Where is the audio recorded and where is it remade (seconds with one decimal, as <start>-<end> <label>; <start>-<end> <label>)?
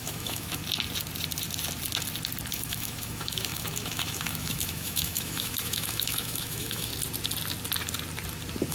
0.0-0.6 remade; 0.6-2.5 recorded; 2.5-6.9 remade; 6.9-8.7 recorded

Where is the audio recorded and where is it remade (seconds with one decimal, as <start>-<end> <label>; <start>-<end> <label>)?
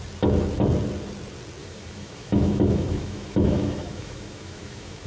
0.0-1.6 recorded; 1.6-5.1 remade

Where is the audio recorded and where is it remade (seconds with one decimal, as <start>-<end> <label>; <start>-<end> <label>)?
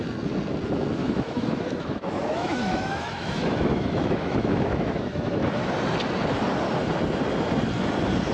0.0-1.0 recorded; 1.0-5.7 remade; 5.7-8.3 recorded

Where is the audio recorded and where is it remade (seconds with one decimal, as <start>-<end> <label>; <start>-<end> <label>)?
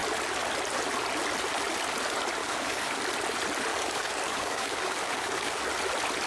0.0-2.4 recorded; 2.4-3.0 remade; 3.0-3.7 recorded; 3.7-5.6 remade; 5.6-6.3 recorded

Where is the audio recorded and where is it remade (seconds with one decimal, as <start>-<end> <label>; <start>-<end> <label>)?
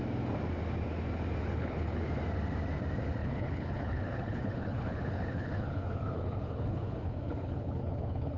0.0-1.4 recorded; 1.4-2.0 remade; 2.0-3.2 recorded; 3.2-8.4 remade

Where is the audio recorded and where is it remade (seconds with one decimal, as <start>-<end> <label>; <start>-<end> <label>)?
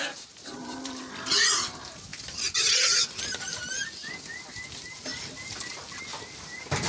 0.0-6.9 recorded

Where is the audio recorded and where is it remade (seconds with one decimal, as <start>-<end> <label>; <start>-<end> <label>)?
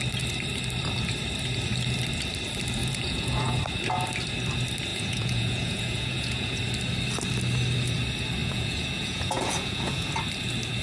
0.0-2.8 recorded; 2.8-3.6 remade; 3.6-4.9 recorded; 4.9-6.6 remade; 6.6-8.4 recorded; 8.4-10.1 remade; 10.1-10.8 recorded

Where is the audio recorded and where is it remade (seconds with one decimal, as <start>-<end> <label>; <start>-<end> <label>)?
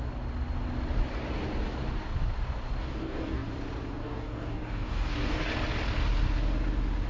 0.0-2.8 recorded; 2.8-3.5 remade; 3.5-4.0 recorded; 4.0-5.5 remade; 5.5-7.1 recorded